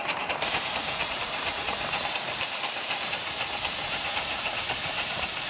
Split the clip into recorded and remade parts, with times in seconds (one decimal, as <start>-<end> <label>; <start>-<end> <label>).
0.0-5.5 remade